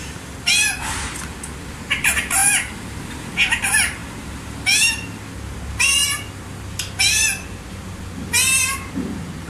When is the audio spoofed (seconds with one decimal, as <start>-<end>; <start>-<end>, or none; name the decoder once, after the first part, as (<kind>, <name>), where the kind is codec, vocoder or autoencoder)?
none